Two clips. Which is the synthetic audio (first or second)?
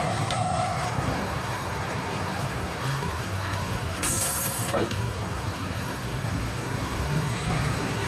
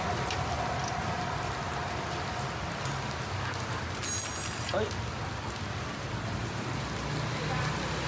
first